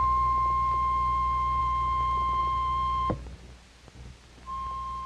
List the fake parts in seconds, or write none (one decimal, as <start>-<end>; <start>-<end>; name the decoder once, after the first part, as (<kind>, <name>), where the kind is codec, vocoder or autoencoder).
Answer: none